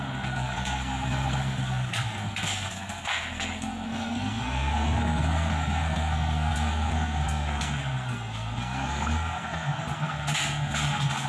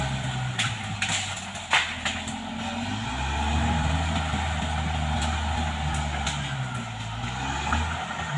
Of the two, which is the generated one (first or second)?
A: first